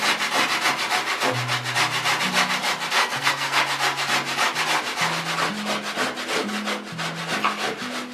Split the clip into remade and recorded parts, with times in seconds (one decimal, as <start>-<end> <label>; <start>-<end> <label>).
0.0-3.0 recorded; 3.0-3.6 remade; 3.6-8.1 recorded